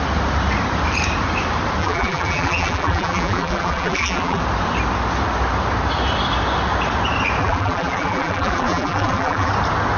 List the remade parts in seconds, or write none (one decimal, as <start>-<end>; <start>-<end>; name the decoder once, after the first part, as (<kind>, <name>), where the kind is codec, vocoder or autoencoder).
1.8-4.4 (vocoder, BigVGAN v2); 7.4-9.5